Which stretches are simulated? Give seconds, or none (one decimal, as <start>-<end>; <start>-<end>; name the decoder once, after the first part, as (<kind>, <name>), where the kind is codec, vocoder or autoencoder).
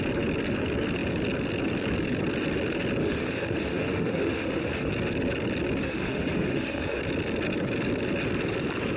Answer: 3.0-4.9 (autoencoder, DAC-VAE); 5.8-7.0